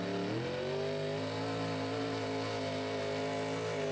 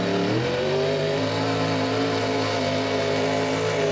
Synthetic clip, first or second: second